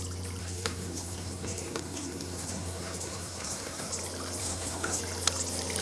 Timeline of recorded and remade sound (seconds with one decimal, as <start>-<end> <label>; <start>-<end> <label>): 0.0-0.4 recorded; 0.4-3.9 remade; 3.9-4.4 recorded; 4.4-5.0 remade; 5.0-5.8 recorded